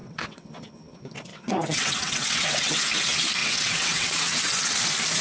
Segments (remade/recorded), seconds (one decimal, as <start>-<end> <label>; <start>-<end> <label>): 0.0-0.5 remade; 0.5-1.3 recorded; 1.3-2.8 remade; 2.8-3.4 recorded; 3.4-4.7 remade; 4.7-5.2 recorded